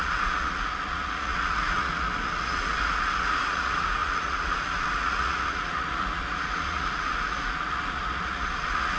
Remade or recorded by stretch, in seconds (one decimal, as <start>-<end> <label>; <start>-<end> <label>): 0.0-9.0 remade